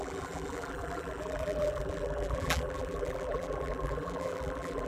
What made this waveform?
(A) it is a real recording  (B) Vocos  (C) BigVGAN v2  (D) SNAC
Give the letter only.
C